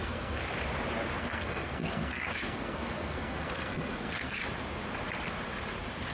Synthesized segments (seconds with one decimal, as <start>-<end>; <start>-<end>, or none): 0.0-0.4; 1.2-4.4